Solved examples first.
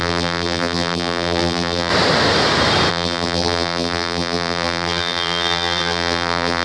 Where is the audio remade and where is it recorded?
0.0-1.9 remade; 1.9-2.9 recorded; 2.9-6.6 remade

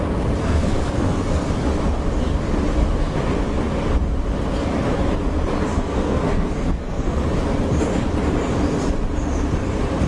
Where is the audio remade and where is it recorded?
0.0-0.4 recorded; 0.4-1.5 remade; 1.5-5.7 recorded; 5.7-7.2 remade; 7.2-10.1 recorded

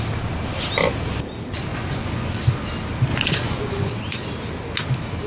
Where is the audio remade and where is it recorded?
0.0-1.7 recorded; 1.7-2.4 remade; 2.4-3.1 recorded; 3.1-3.9 remade; 3.9-5.3 recorded

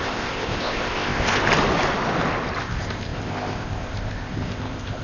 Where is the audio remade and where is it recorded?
0.0-1.4 remade; 1.4-2.6 recorded; 2.6-5.0 remade

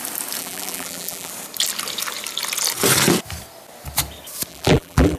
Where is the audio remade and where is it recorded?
0.0-0.4 recorded; 0.4-1.3 remade; 1.3-4.5 recorded; 4.5-5.2 remade

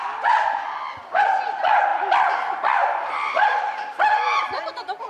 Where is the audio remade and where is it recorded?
0.0-1.9 recorded; 1.9-5.1 remade

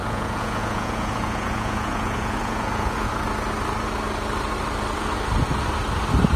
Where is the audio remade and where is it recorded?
0.0-3.1 remade; 3.1-6.4 recorded

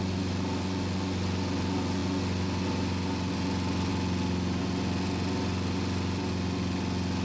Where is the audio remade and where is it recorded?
0.0-7.2 recorded